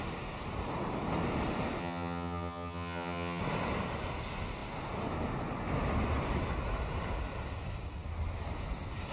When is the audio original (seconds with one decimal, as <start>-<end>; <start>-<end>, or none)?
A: 0.0-1.8; 3.4-9.1